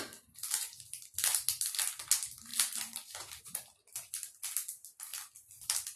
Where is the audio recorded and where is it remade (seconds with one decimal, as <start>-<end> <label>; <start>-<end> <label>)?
0.0-6.0 recorded